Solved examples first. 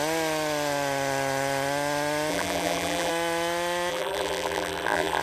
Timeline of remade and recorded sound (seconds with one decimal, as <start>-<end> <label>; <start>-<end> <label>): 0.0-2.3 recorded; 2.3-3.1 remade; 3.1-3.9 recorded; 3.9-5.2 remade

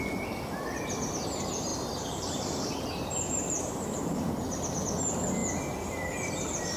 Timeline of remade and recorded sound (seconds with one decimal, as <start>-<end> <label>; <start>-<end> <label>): 0.0-1.7 recorded; 1.7-4.3 remade; 4.3-6.8 recorded

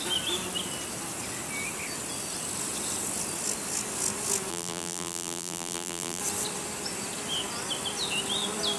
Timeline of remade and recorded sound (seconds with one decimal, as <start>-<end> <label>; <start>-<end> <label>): 0.0-4.5 recorded; 4.5-6.2 remade; 6.2-8.8 recorded

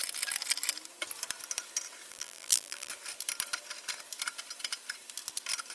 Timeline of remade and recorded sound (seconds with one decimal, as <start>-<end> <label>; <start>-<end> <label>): 0.0-2.1 recorded; 2.1-2.9 remade; 2.9-5.7 recorded